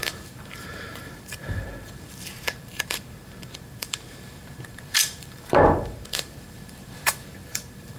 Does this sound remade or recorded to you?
remade